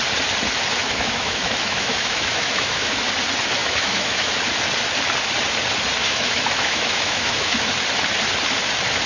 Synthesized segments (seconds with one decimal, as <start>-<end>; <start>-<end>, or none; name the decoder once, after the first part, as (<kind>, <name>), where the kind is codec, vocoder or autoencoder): 0.8-3.1 (autoencoder, DAC-VAE); 3.6-4.3; 6.0-7.7